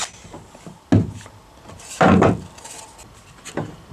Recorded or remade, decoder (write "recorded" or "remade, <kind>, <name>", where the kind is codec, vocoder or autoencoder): recorded